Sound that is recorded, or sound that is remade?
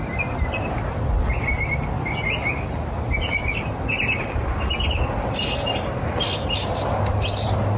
recorded